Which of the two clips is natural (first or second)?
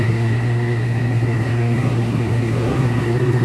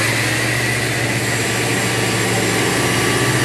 second